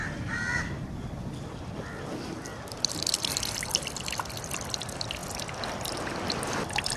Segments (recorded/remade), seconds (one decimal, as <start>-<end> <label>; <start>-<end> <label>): 0.0-2.5 recorded; 2.5-3.5 remade; 3.5-5.2 recorded; 5.2-5.9 remade; 5.9-7.0 recorded